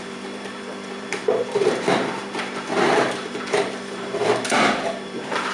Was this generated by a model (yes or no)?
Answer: yes